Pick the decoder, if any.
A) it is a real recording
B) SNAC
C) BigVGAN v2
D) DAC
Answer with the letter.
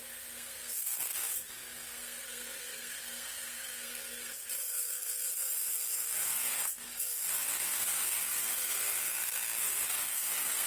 B